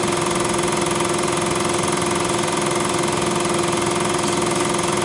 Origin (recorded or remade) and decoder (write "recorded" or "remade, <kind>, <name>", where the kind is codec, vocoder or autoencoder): recorded